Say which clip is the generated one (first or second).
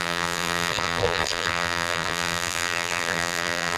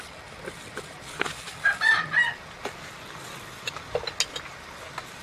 first